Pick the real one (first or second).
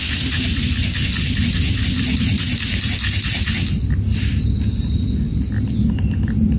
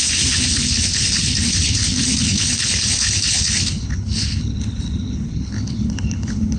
first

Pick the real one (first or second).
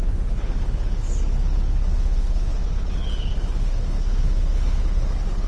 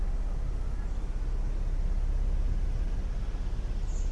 second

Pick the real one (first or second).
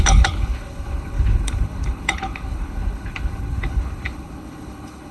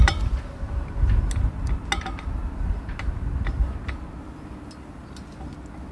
second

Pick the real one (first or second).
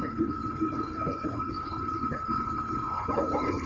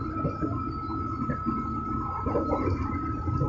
second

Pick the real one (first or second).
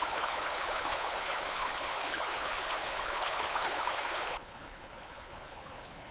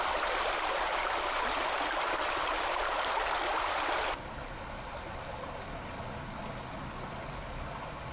second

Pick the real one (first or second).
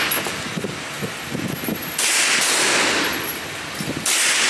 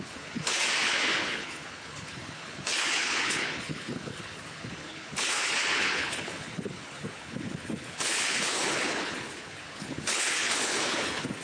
first